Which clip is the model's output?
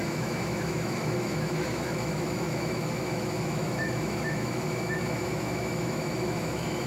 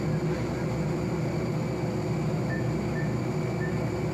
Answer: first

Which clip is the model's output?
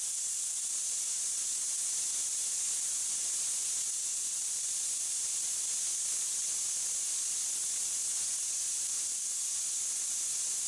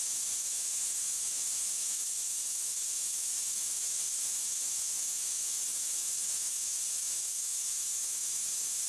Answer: second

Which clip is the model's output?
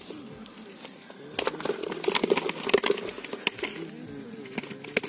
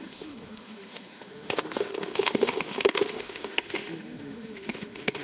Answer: second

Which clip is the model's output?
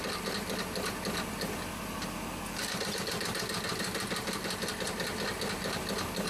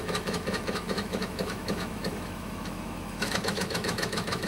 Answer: second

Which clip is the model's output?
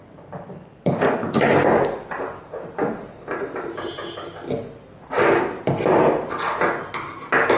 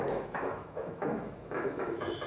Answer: second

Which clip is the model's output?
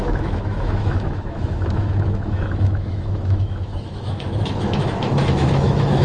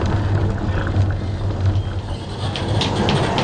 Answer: first